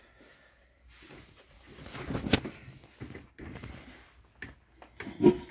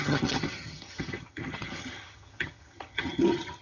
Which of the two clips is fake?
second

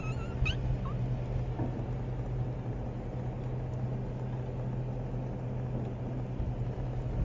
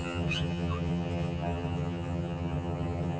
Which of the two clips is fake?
second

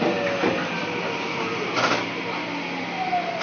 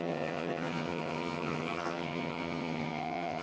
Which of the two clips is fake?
second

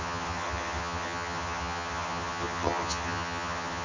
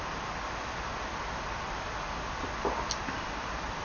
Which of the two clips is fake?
first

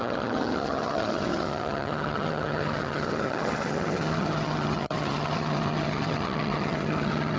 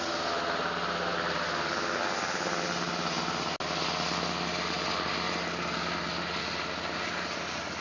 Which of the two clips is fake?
first